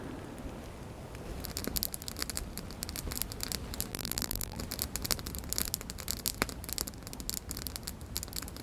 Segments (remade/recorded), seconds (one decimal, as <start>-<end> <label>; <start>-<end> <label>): 0.0-3.9 recorded; 3.9-4.6 remade; 4.6-8.6 recorded